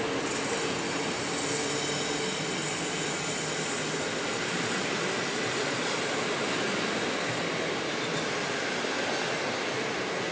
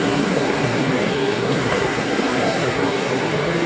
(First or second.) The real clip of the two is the first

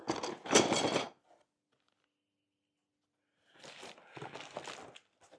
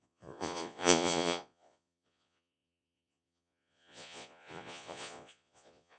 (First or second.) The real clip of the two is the first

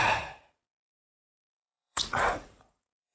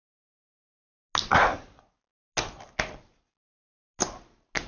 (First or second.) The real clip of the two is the second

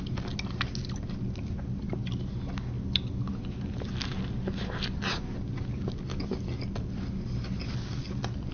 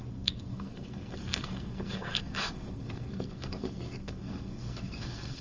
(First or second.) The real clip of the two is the first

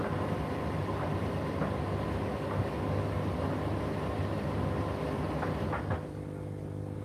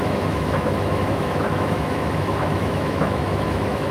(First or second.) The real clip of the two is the first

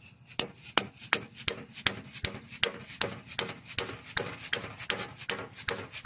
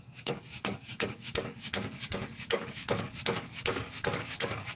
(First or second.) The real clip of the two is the first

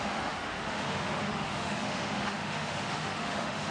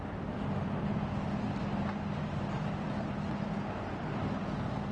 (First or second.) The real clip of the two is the second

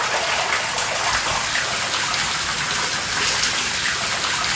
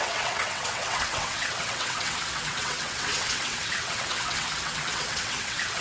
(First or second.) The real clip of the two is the first